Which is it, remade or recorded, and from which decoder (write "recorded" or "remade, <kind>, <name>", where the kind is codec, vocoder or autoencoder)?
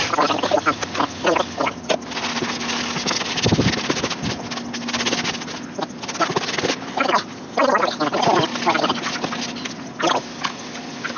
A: recorded